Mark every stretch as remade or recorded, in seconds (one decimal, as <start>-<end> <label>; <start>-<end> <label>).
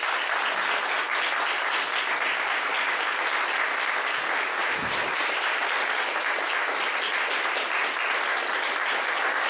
0.0-4.6 recorded; 4.6-5.6 remade; 5.6-9.5 recorded